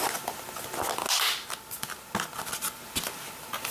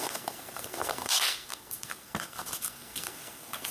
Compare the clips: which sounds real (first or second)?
first